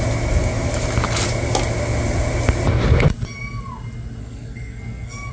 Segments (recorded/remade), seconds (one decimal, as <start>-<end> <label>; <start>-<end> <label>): 0.0-4.2 recorded; 4.2-5.3 remade